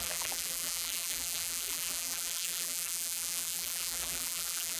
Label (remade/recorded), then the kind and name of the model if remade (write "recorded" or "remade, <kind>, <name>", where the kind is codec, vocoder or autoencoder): remade, vocoder, BigVGAN v2